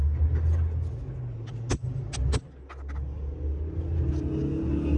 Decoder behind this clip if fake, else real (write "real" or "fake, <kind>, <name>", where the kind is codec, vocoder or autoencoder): real